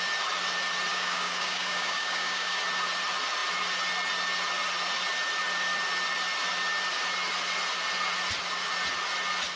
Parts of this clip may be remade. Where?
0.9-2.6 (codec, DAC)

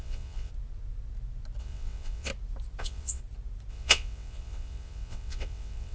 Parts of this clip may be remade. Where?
0.0-0.5 (vocoder, WaveNeXt); 1.6-2.3; 2.8-3.2; 3.7-5.9

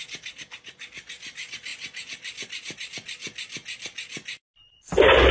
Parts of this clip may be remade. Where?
none

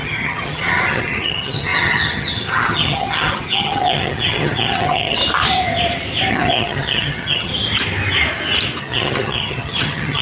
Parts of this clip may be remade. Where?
0.0-5.2 (vocoder, HiFi-GAN); 6.3-7.5; 8.8-10.2

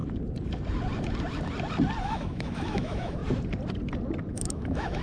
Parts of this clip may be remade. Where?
2.0-3.2 (autoencoder, DAC-VAE); 4.3-5.0